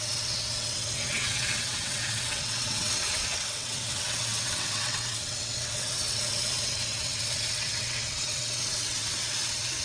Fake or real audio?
fake